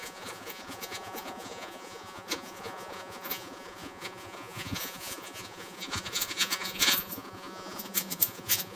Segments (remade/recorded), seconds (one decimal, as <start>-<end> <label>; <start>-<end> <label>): 0.0-8.8 remade